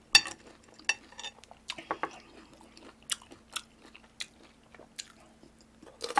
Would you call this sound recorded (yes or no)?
yes